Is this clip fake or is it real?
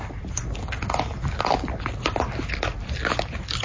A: real